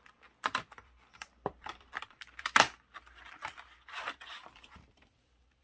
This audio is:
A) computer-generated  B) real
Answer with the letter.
A